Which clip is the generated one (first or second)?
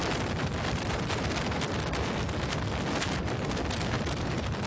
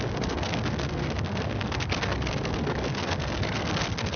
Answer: second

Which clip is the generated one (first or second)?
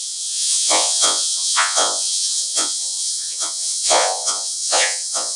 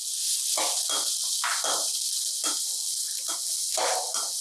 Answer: first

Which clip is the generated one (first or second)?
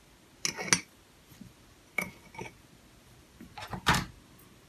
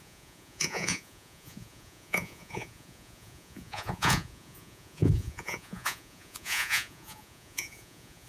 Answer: second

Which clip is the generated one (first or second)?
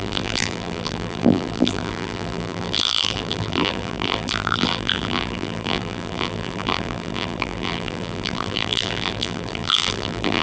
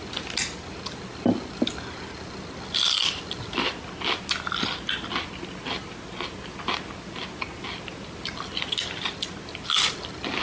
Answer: first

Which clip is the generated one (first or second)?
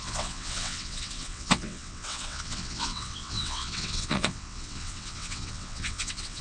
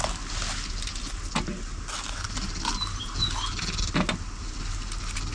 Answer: first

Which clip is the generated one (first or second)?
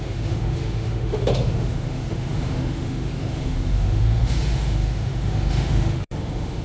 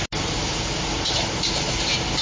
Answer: first